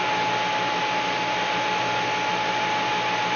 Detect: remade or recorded recorded